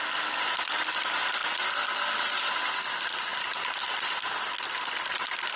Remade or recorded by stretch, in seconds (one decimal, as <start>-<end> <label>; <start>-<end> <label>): 0.0-1.4 recorded; 1.4-2.0 remade; 2.0-3.3 recorded; 3.3-3.8 remade; 3.8-5.6 recorded

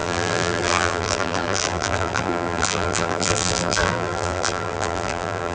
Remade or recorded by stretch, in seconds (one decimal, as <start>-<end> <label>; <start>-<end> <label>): 0.0-5.5 remade

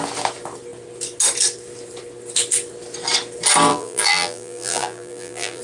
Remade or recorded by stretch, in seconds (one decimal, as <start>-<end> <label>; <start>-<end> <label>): 0.0-3.7 recorded; 3.7-5.6 remade

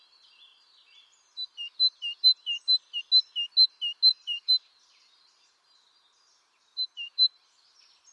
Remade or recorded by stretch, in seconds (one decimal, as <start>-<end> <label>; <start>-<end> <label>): 0.0-0.5 recorded; 0.5-3.0 remade; 3.0-4.1 recorded; 4.1-8.1 remade

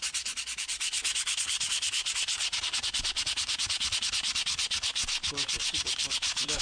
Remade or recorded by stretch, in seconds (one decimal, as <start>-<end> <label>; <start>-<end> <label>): 0.0-0.7 recorded; 0.7-4.7 remade; 4.7-5.6 recorded; 5.6-6.6 remade